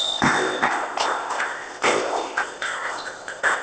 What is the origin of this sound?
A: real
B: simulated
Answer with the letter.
B